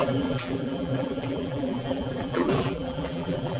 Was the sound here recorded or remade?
remade